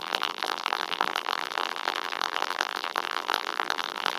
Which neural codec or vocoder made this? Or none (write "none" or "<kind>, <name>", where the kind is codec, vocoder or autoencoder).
vocoder, BigVGAN v2